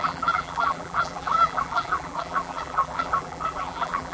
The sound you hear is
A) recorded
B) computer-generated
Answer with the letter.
B